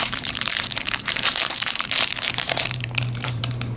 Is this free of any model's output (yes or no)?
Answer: no